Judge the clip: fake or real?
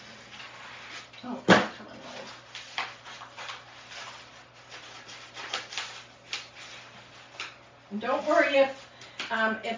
real